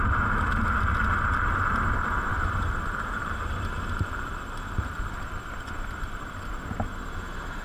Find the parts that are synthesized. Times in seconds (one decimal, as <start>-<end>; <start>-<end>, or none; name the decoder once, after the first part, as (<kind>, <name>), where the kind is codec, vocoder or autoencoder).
none